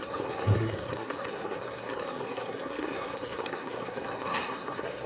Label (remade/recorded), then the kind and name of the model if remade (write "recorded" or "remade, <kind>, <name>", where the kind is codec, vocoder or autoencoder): remade, codec, SNAC